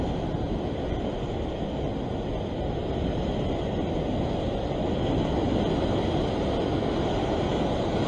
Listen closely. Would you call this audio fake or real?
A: real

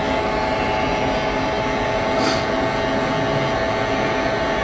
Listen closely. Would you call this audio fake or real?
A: real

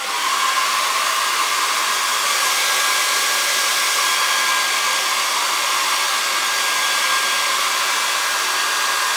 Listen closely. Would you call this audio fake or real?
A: real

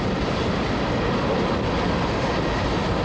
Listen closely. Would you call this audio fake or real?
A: real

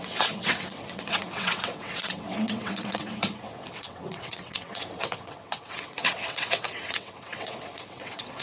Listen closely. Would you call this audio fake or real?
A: fake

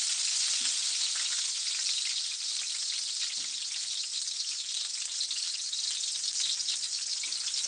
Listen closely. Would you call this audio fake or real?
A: real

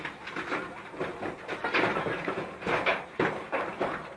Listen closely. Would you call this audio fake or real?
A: real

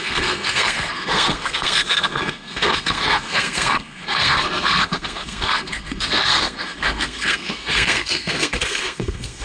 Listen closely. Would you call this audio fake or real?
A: fake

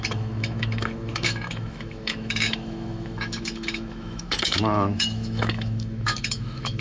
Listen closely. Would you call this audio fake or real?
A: fake